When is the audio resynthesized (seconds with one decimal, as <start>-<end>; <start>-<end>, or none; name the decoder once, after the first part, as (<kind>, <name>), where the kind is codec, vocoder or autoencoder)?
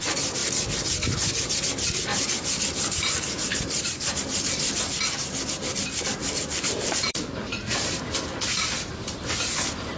2.1-5.0 (vocoder, BigVGAN v2); 6.2-9.6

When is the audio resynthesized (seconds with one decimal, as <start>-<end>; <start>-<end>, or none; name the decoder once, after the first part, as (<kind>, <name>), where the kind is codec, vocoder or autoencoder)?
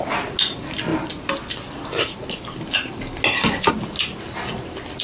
none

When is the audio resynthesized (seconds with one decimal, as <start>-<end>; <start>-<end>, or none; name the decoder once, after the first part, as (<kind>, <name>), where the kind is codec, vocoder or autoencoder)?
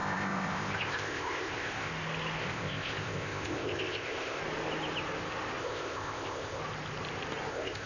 0.0-1.9 (codec, ZipCodec); 2.4-4.4; 5.6-6.6; 7.5-7.9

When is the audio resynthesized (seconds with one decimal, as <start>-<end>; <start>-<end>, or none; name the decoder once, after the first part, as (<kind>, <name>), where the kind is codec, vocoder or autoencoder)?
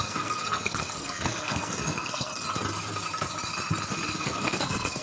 0.0-2.3 (codec, SNAC); 4.2-5.0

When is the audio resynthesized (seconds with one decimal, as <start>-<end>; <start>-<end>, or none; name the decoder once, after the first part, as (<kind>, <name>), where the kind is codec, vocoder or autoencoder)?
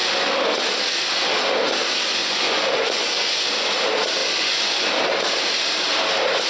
2.2-3.5 (vocoder, Vocos); 4.2-4.9